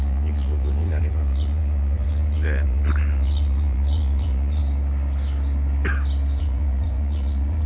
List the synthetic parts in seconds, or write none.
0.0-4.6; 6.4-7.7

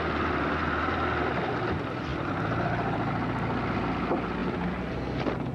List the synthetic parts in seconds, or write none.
none

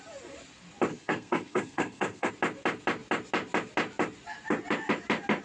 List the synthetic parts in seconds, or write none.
0.9-2.3

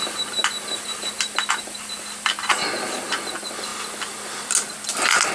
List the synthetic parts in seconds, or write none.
none

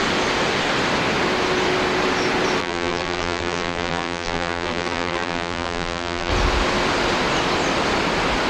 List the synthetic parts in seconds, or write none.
2.6-6.3